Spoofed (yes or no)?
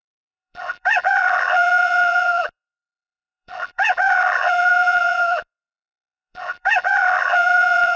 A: yes